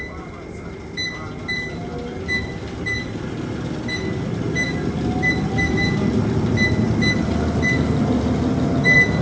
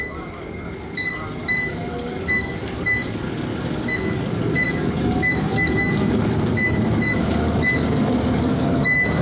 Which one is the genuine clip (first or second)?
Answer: first